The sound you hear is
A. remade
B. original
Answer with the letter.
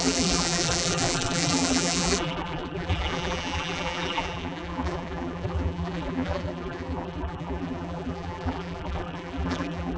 A